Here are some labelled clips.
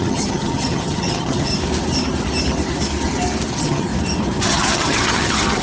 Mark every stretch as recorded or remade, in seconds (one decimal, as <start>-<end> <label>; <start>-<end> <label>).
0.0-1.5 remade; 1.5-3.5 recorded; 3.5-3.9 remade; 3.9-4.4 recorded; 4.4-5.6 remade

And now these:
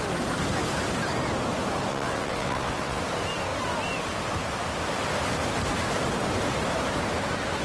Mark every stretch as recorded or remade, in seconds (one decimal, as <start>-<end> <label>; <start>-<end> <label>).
0.0-1.9 recorded; 1.9-3.0 remade; 3.0-7.6 recorded

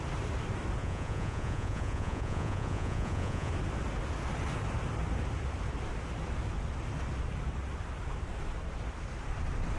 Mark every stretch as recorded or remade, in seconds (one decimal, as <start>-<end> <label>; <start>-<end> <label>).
0.0-0.8 recorded; 0.8-3.5 remade; 3.5-9.8 recorded

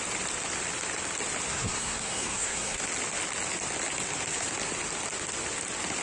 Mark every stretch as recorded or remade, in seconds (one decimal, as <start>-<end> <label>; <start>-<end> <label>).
0.0-1.5 recorded; 1.5-2.8 remade; 2.8-6.0 recorded